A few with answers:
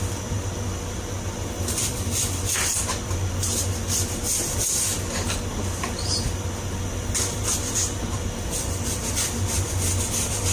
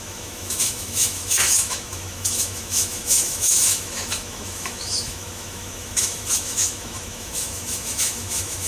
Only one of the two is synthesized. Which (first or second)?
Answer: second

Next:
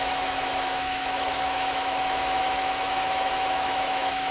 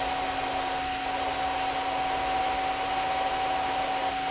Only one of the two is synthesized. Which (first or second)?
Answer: first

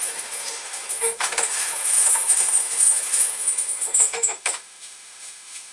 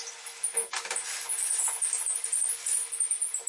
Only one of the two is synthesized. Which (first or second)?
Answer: first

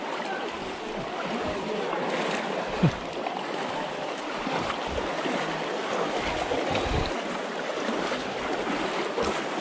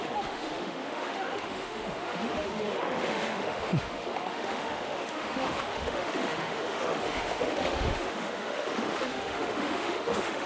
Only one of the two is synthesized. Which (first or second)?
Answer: second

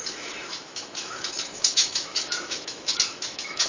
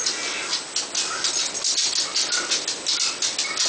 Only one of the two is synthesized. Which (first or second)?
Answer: first